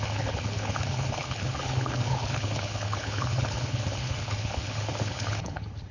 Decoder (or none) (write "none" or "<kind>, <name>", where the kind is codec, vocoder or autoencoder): codec, HILCodec